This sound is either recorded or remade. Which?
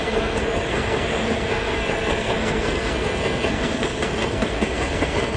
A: remade